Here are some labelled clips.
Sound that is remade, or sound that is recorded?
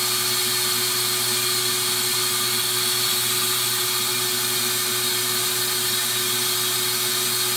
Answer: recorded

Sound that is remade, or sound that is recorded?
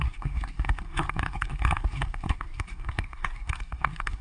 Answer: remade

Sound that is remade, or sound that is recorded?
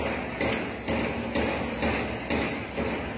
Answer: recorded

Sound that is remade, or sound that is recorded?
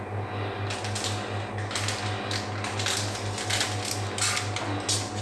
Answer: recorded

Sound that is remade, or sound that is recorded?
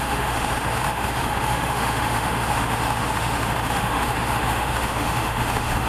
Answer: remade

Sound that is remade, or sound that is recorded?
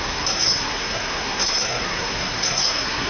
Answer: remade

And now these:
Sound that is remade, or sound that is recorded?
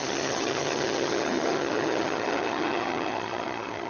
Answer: remade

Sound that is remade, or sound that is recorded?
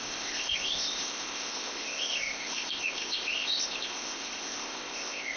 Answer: remade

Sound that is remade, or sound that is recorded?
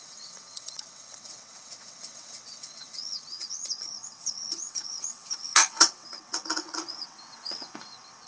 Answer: remade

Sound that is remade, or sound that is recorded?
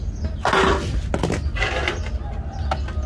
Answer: recorded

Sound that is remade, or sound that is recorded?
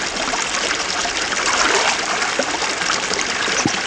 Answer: recorded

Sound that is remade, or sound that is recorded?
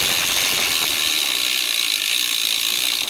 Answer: recorded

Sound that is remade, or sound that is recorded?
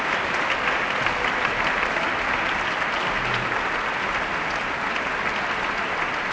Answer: recorded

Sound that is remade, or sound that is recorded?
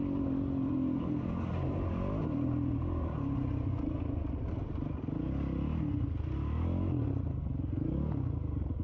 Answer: recorded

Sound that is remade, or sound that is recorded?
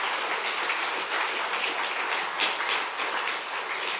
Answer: recorded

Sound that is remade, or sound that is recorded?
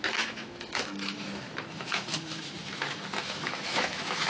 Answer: remade